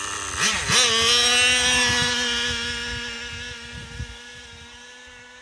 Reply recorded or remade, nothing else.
recorded